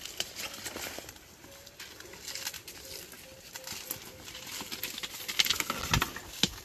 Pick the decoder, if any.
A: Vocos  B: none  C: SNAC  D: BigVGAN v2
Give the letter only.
B